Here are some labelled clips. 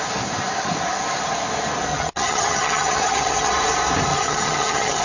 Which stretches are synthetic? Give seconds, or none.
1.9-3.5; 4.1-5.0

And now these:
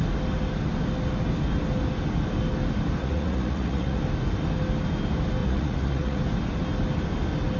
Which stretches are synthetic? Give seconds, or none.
3.0-4.0; 5.4-6.2